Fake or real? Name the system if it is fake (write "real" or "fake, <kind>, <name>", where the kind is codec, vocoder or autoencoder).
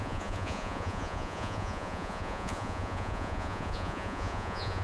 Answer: fake, vocoder, Vocos